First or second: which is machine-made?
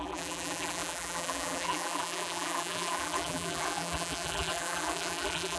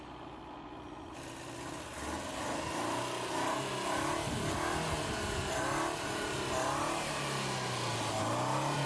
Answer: first